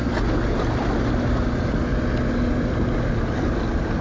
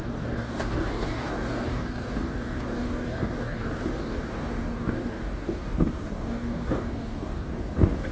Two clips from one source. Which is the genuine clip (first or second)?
first